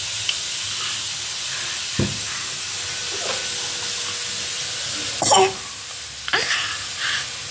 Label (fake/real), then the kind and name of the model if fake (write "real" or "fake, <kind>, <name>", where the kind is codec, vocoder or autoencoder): real